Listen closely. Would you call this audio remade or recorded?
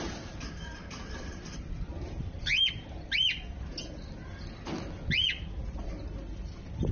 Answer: recorded